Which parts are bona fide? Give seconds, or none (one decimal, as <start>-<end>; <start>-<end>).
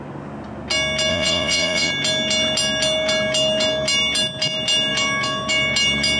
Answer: 0.0-1.1; 1.9-6.2